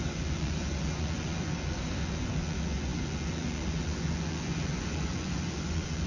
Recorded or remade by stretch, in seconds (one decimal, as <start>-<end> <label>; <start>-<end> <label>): 0.0-6.1 remade